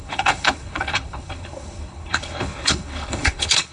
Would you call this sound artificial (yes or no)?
yes